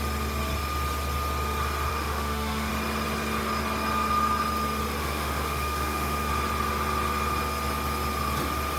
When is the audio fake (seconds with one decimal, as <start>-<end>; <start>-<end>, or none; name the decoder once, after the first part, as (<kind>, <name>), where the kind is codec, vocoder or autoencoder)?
1.9-2.7 (autoencoder, DAC-VAE); 5.0-6.3